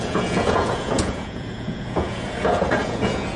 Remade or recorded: remade